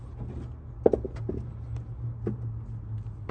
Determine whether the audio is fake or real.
real